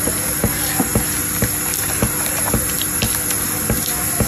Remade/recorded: recorded